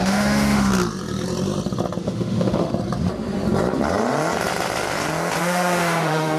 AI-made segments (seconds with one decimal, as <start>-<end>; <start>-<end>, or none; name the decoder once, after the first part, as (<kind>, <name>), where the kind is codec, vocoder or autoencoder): 0.0-0.7 (autoencoder, DAC-VAE); 2.0-2.7; 5.4-6.4